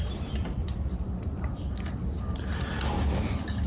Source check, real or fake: fake